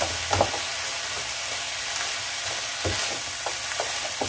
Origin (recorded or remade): recorded